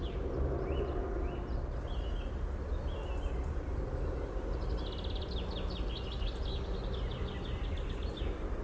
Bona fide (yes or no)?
yes